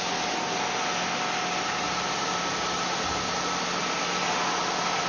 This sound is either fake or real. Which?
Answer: real